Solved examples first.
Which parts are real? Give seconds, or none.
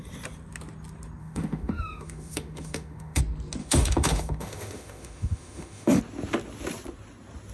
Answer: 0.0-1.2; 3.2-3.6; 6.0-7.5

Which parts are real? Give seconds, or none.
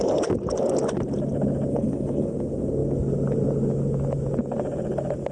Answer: 0.0-1.7; 2.3-5.3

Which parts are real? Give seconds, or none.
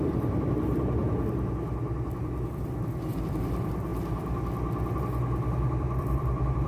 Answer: 1.0-2.2; 3.9-5.0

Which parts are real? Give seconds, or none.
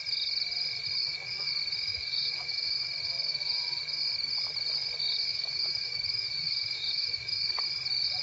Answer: 0.0-1.0; 1.5-1.9; 2.9-3.3; 3.8-5.3; 7.4-8.2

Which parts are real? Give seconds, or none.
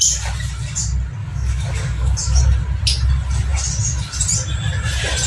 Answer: 0.0-1.2; 2.4-5.3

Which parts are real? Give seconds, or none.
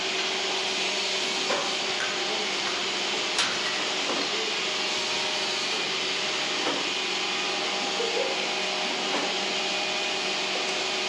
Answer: 0.0-1.6; 2.6-11.1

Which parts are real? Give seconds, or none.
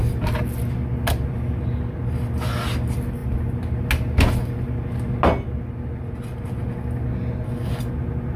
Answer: 0.0-8.4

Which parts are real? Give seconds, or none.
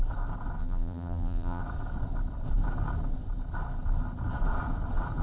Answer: 0.0-0.6; 1.6-5.2